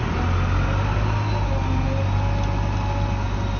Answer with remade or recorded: recorded